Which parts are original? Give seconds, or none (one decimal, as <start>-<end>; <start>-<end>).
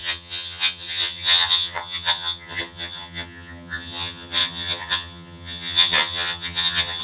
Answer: none